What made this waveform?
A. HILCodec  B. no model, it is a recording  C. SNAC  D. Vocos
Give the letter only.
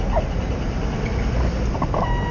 B